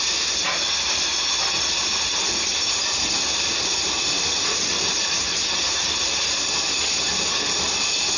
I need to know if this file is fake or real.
real